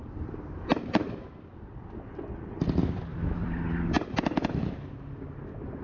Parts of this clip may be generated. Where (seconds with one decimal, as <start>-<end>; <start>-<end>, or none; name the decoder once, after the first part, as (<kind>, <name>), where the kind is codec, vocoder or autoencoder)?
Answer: 0.0-1.5 (vocoder, BigVGAN v2); 3.1-5.8